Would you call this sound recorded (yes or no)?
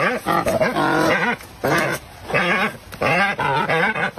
yes